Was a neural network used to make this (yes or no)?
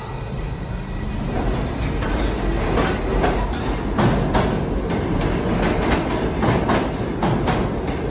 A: no